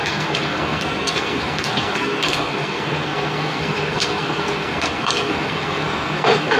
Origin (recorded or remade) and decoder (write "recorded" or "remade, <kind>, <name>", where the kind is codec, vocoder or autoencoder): remade, codec, SNAC